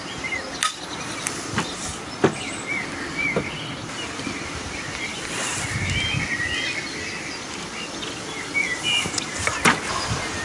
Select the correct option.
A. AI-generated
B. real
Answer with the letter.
B